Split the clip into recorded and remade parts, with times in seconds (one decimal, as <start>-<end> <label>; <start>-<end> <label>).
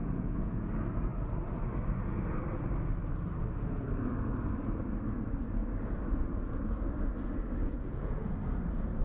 0.0-0.7 remade; 0.7-7.6 recorded; 7.6-8.3 remade; 8.3-9.0 recorded